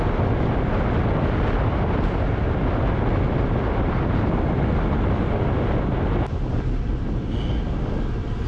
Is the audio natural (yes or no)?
yes